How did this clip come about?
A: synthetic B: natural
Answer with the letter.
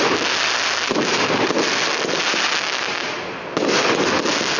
B